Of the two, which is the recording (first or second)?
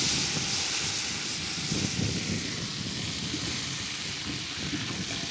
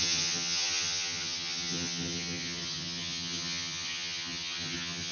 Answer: first